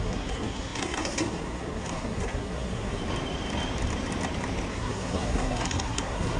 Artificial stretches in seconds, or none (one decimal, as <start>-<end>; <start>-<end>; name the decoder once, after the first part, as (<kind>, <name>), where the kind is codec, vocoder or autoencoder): 0.0-3.0 (codec, SNAC); 4.7-6.4